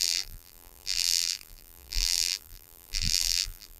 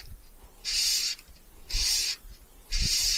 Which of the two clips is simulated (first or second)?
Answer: first